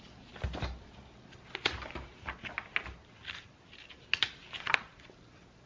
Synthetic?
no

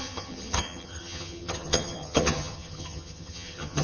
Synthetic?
yes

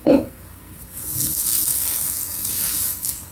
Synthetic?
yes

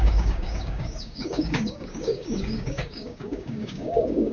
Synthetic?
yes